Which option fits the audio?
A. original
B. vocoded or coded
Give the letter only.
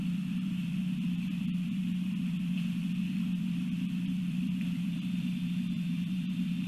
B